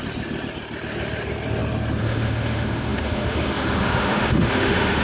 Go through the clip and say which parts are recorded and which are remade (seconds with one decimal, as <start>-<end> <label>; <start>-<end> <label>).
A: 0.0-2.0 recorded; 2.0-5.0 remade